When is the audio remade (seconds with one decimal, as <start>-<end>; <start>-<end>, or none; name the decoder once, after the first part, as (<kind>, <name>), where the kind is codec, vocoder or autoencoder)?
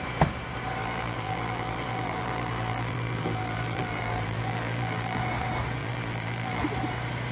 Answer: 0.8-5.2 (vocoder, BigVGAN v2); 5.8-6.6